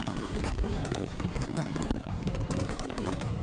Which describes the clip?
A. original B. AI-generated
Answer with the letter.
B